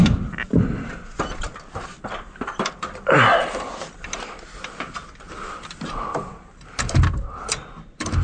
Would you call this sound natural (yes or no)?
yes